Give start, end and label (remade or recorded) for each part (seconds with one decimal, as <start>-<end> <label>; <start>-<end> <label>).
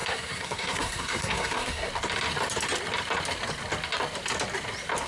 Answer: 0.0-1.9 remade; 1.9-5.1 recorded